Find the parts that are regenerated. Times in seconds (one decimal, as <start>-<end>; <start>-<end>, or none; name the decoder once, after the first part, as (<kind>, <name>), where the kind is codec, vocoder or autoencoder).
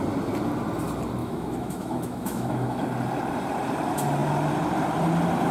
1.2-2.8 (autoencoder, DAC-VAE)